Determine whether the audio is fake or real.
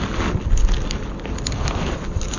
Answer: real